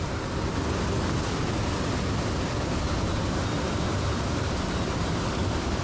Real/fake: real